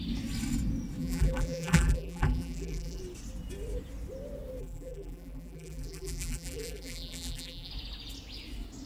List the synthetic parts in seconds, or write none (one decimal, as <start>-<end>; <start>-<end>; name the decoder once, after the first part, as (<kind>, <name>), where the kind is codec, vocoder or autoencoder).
1.0-3.0 (vocoder, BigVGAN v2); 4.6-7.7